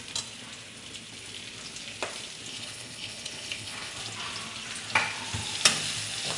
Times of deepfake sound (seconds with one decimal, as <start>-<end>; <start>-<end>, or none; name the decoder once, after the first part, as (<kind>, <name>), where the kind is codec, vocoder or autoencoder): 2.5-4.0 (codec, HILCodec)